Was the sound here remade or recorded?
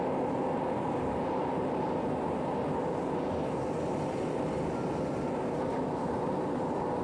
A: recorded